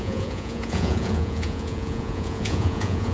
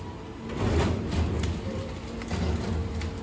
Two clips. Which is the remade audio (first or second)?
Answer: first